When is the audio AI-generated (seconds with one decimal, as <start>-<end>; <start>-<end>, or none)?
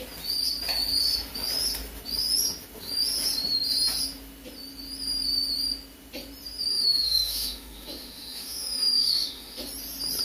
6.7-9.6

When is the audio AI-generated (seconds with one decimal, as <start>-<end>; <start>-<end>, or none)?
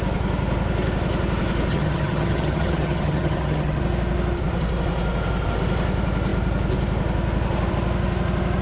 1.7-3.8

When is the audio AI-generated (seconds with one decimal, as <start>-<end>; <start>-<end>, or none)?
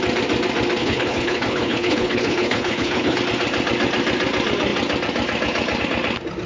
0.8-3.2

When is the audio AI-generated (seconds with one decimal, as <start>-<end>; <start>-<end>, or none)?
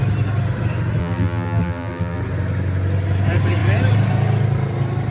1.0-2.2